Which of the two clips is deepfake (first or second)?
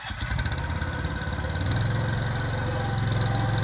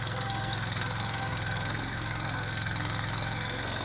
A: second